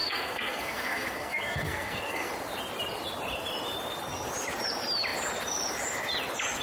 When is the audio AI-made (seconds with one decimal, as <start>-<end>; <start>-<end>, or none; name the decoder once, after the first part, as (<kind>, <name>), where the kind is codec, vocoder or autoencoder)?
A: 0.0-2.3 (codec, SNAC)